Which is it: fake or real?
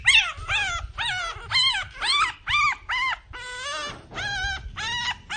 real